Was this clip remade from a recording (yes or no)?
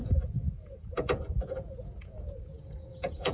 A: yes